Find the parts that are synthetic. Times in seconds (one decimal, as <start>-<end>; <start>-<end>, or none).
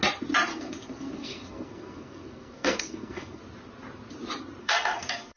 0.5-3.4; 4.6-5.4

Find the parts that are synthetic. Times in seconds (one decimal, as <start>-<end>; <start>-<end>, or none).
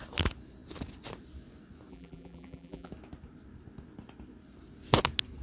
1.9-2.9